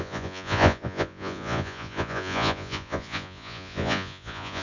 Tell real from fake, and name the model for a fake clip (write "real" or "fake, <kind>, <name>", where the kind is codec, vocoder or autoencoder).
fake, vocoder, Vocos